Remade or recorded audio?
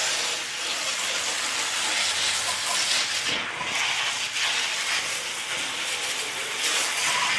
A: recorded